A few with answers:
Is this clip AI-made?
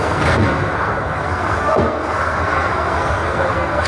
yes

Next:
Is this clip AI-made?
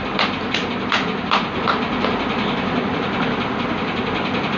no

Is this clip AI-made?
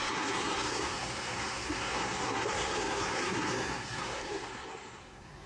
yes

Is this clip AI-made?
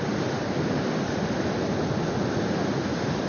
no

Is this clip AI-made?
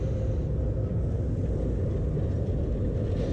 no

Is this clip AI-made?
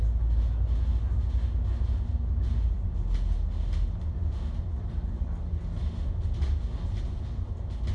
no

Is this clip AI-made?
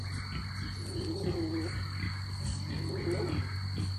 no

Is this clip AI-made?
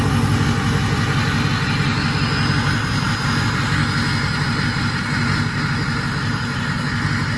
no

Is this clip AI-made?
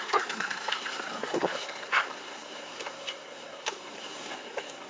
yes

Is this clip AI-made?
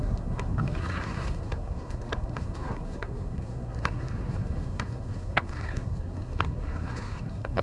yes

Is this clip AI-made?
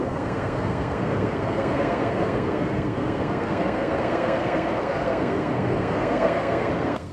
yes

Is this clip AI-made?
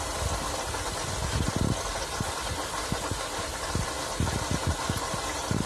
no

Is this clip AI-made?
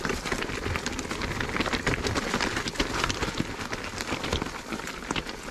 no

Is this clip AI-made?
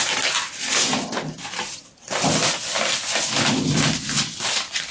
no